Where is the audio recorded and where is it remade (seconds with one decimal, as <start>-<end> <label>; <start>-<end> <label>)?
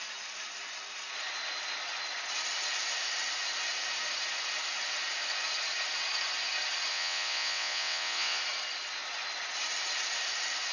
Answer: 0.0-6.9 recorded; 6.9-8.4 remade; 8.4-10.7 recorded